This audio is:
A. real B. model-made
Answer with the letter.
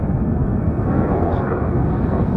B